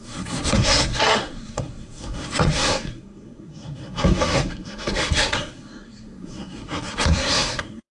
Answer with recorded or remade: remade